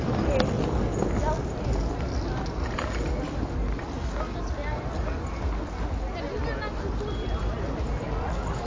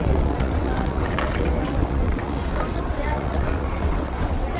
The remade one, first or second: second